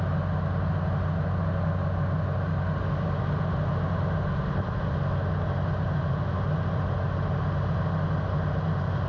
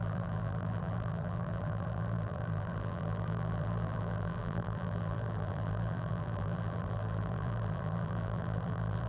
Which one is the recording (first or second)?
first